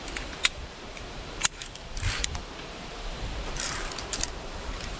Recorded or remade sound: remade